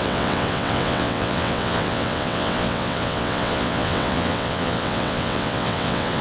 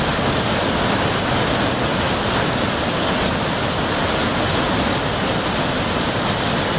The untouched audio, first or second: second